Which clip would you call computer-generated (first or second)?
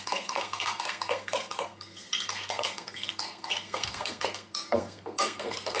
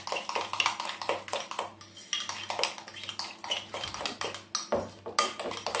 first